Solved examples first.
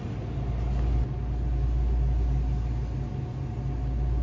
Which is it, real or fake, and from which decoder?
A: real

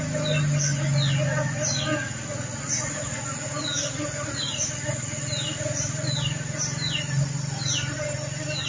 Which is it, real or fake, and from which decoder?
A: real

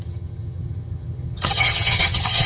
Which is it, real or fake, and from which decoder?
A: fake, vocoder, HiFi-GAN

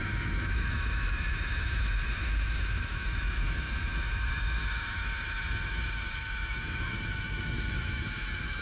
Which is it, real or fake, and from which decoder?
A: fake, autoencoder, DAC-VAE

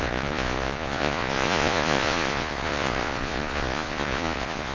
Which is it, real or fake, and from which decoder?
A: fake, vocoder, Vocos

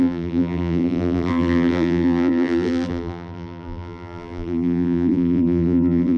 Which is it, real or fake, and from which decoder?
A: fake, vocoder, BigVGAN v2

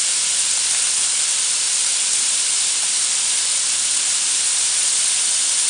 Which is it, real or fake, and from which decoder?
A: real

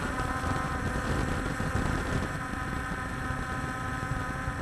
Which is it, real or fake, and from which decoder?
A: real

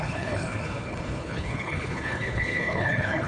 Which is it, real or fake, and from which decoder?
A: fake, codec, HILCodec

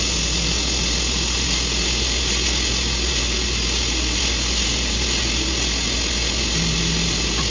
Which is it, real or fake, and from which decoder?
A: real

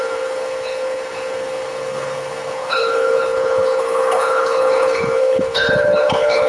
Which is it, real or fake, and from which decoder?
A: fake, codec, HILCodec